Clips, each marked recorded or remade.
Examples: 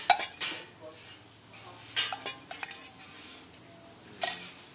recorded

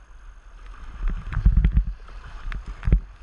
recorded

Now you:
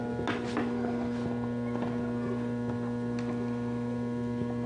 recorded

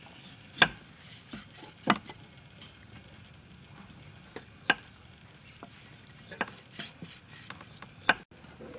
recorded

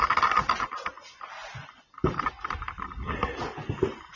recorded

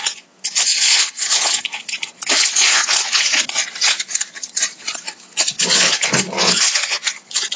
remade